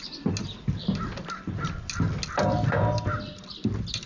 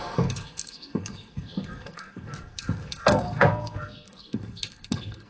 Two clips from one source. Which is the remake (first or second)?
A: second